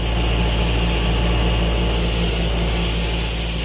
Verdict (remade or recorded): recorded